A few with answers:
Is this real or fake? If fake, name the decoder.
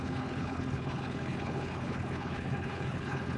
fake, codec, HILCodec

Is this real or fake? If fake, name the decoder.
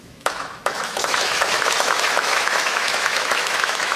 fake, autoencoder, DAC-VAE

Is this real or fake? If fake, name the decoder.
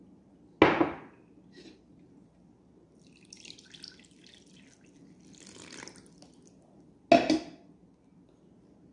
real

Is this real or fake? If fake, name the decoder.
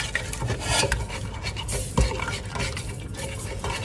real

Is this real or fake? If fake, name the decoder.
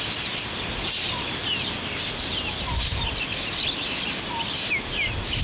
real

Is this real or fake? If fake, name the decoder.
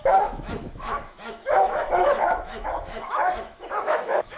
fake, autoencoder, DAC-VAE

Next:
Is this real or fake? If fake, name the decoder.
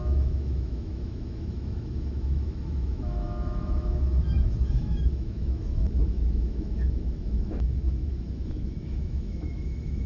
fake, autoencoder, DAC-VAE